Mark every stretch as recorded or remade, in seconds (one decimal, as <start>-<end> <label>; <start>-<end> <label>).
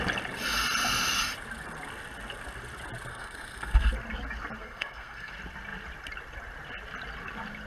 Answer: 0.0-3.1 recorded; 3.1-3.9 remade; 3.9-4.6 recorded; 4.6-5.3 remade; 5.3-7.7 recorded